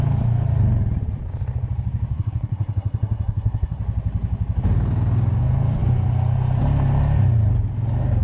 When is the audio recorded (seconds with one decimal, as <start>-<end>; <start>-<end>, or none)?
0.0-2.1; 3.8-8.2

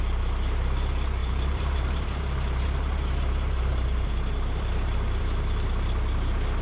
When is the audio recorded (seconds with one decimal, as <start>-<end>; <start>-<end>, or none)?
0.0-1.2; 5.2-6.6